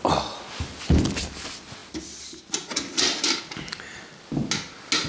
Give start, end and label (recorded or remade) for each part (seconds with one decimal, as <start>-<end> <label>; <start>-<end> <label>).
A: 0.0-5.1 recorded